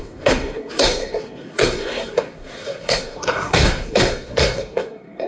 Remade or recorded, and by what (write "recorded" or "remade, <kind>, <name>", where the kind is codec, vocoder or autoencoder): remade, codec, SNAC